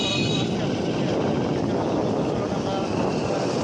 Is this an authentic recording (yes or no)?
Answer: yes